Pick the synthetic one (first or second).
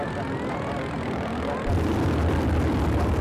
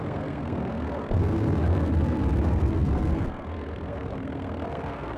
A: second